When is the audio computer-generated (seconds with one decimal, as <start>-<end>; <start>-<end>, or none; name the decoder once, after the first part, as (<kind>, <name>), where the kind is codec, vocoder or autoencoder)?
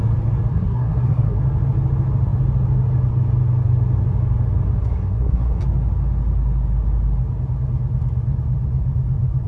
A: 0.5-1.4 (codec, SNAC); 4.8-5.6